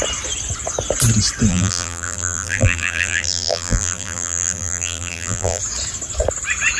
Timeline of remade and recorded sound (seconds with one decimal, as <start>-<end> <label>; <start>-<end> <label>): 0.0-1.5 recorded; 1.5-5.6 remade; 5.6-6.8 recorded